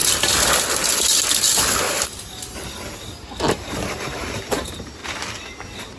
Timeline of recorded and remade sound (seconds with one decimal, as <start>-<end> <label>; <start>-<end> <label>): 0.0-3.5 recorded; 3.5-5.0 remade; 5.0-6.0 recorded

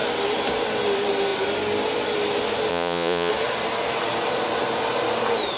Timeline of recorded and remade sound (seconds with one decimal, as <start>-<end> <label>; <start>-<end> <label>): 0.0-2.7 recorded; 2.7-3.3 remade; 3.3-5.6 recorded

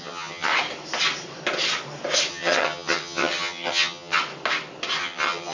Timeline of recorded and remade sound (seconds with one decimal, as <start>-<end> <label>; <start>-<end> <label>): 0.0-0.5 remade; 0.5-2.3 recorded; 2.3-4.2 remade; 4.2-5.0 recorded; 5.0-5.5 remade